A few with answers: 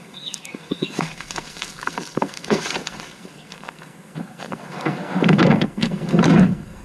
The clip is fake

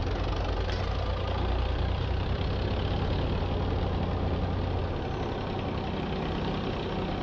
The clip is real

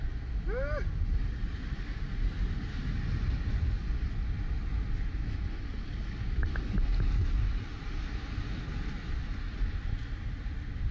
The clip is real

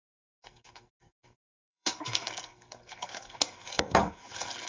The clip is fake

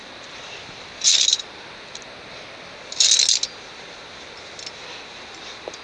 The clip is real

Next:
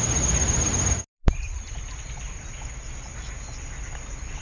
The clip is real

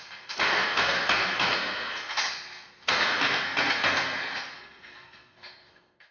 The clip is fake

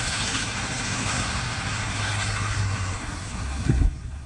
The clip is fake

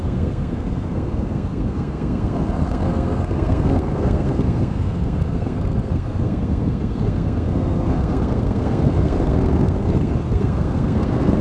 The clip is fake